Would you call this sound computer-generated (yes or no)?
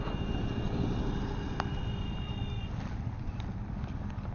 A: no